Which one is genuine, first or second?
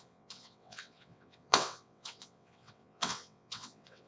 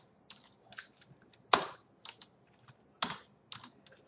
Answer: second